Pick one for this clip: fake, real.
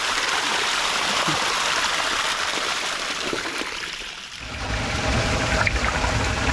fake